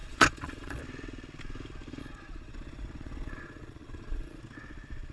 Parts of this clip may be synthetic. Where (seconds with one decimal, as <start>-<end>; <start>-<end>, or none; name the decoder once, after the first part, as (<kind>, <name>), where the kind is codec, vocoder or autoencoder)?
0.0-0.8 (vocoder, Vocos); 2.0-4.4